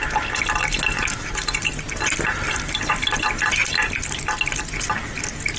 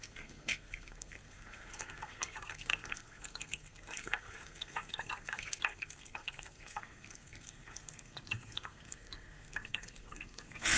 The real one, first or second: first